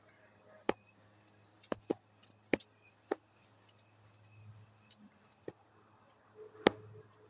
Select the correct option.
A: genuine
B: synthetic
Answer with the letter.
A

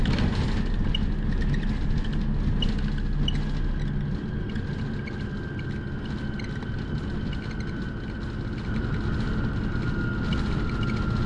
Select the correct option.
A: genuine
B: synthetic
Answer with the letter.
A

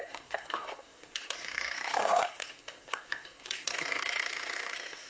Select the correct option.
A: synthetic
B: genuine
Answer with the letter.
A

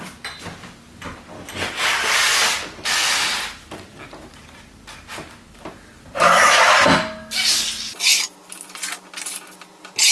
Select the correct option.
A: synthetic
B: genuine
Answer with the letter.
B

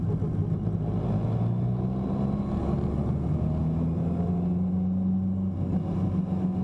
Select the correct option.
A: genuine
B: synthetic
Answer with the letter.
A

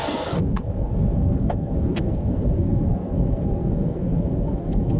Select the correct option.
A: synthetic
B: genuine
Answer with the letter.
A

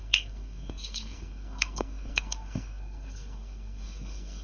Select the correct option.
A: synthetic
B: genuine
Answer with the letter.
A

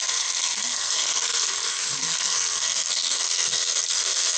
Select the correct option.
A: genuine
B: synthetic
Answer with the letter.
B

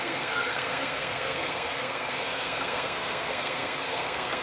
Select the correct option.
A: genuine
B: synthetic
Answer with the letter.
B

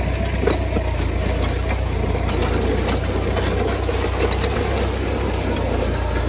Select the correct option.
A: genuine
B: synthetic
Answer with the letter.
A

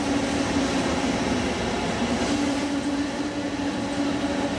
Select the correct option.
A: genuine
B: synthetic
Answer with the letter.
A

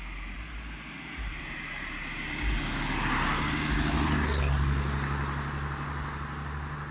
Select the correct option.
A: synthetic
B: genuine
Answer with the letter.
B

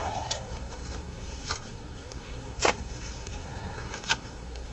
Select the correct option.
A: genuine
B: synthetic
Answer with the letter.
B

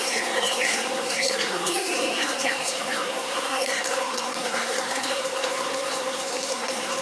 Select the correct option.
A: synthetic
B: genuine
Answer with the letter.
A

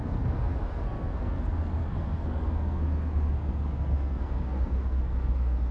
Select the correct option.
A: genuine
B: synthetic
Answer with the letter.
B